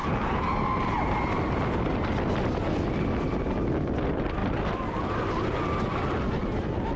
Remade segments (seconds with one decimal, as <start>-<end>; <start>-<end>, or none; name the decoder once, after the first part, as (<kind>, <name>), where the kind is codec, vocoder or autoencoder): none